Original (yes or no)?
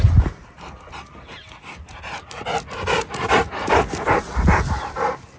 yes